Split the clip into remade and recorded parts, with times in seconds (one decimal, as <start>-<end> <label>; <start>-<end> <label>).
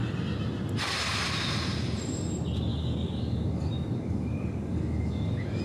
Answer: 0.0-2.7 recorded; 2.7-5.6 remade